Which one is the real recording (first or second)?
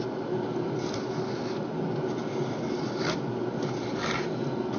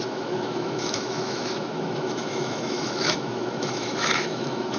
first